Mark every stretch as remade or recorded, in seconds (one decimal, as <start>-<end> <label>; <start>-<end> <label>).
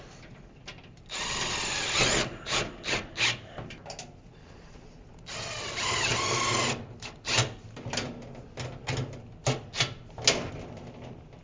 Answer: 0.0-11.4 recorded